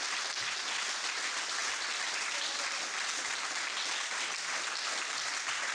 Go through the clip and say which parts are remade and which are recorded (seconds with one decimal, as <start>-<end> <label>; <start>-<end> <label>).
0.0-5.7 recorded